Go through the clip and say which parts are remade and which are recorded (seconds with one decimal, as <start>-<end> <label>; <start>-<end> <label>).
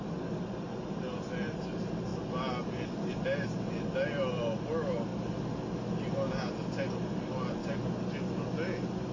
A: 0.0-9.1 recorded